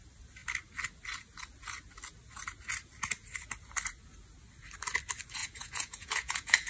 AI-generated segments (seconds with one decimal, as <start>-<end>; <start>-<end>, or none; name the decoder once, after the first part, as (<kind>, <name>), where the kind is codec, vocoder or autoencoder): 5.4-6.7 (vocoder, Vocos)